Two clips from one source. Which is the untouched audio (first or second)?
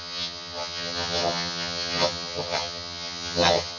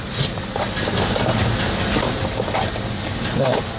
second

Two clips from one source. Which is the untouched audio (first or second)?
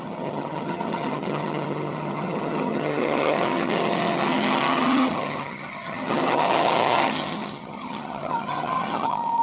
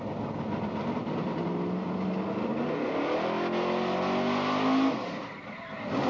second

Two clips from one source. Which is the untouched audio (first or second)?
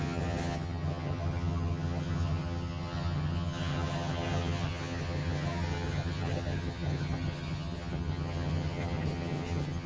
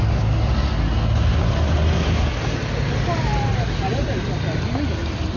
second